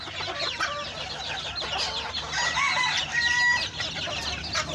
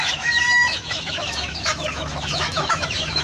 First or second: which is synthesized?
second